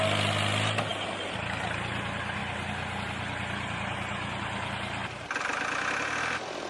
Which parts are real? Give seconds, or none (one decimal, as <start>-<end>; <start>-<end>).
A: 0.0-6.7